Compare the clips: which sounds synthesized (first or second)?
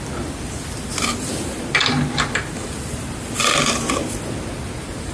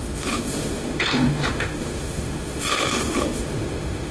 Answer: second